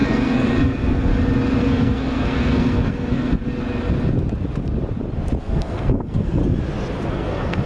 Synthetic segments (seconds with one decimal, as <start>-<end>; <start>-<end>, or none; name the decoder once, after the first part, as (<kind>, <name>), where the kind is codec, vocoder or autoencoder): 0.0-1.1 (codec, SNAC); 1.6-3.4; 5.4-6.4; 7.1-7.7